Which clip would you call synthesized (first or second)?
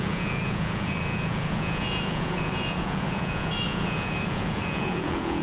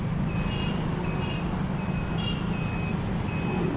first